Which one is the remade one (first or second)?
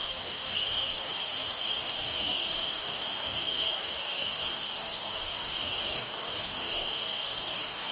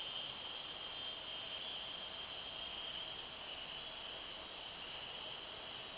first